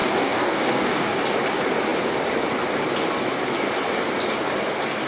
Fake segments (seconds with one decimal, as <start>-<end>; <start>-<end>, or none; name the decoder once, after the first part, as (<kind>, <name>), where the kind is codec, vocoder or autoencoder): 0.0-1.2 (codec, DAC)